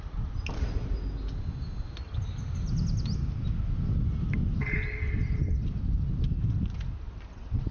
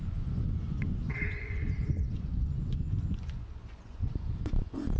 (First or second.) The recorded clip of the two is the first